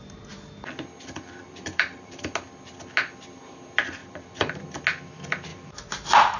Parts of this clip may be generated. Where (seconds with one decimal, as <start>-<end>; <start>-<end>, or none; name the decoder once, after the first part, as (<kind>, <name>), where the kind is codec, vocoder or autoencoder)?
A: 1.4-2.2 (vocoder, BigVGAN v2); 4.0-4.6; 5.5-6.4